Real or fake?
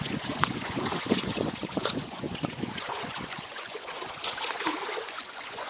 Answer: fake